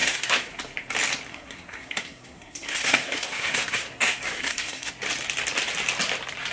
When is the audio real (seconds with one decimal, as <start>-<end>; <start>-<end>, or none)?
0.5-1.3; 4.9-6.5